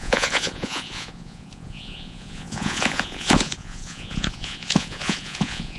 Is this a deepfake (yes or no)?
yes